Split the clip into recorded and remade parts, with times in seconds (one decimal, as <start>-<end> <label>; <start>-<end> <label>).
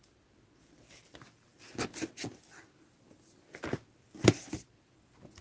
0.0-5.4 recorded